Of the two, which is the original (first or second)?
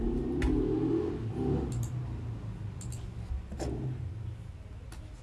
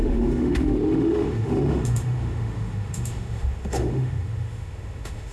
first